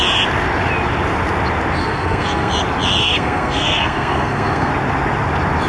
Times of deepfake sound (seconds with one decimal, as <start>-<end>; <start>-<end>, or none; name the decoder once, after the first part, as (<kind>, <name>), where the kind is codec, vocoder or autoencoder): 1.8-2.5 (codec, SNAC); 3.0-4.7

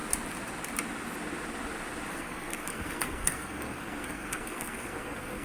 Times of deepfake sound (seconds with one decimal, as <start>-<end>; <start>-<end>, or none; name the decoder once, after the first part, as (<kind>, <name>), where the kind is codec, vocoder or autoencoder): 2.1-5.4 (codec, SNAC)

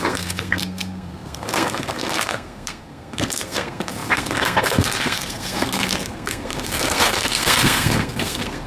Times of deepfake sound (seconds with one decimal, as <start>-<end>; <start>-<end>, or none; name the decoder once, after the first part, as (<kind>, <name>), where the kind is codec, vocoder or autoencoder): 0.0-8.7 (codec, SNAC)

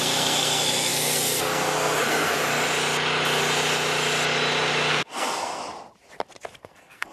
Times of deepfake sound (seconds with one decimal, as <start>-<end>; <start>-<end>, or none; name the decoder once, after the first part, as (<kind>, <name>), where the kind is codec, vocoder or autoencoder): 0.0-2.4 (codec, SNAC); 4.9-5.6; 6.6-7.1

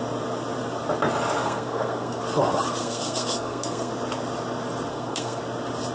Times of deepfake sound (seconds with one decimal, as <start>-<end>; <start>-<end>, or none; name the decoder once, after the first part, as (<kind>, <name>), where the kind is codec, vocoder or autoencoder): 1.4-2.2 (codec, SNAC); 2.8-3.9; 4.9-5.4

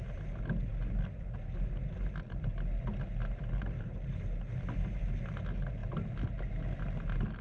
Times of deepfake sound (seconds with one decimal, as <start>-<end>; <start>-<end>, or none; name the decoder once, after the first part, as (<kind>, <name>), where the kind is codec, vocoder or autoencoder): none